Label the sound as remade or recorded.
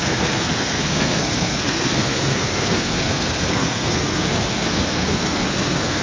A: remade